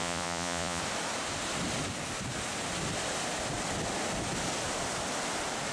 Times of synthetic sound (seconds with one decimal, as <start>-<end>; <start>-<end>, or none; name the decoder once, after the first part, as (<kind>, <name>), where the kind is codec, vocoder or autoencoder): 0.0-0.8 (vocoder, Vocos)

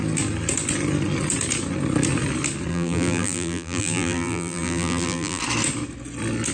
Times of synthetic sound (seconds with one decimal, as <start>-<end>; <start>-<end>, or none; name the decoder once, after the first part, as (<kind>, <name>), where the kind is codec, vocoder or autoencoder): 2.7-5.4 (vocoder, BigVGAN v2)